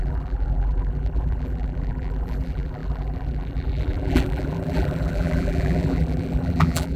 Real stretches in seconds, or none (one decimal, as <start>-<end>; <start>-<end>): none